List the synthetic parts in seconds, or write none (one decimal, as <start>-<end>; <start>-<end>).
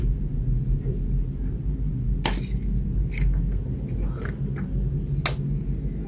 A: none